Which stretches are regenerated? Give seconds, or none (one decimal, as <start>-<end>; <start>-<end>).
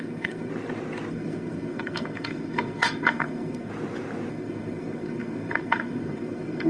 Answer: 0.0-0.5; 1.1-3.7; 4.3-6.7